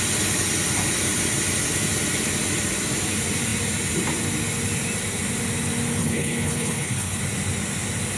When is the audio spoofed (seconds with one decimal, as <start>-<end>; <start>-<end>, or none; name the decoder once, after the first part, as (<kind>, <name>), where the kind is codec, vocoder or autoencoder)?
6.0-7.2 (codec, HILCodec)